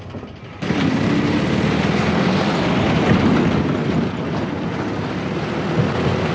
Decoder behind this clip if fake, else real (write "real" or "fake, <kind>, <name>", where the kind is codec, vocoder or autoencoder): real